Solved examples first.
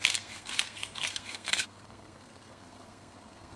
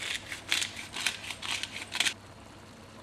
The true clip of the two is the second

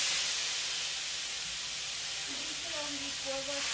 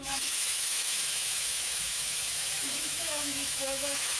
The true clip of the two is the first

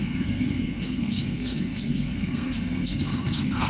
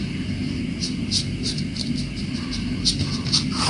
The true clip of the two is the second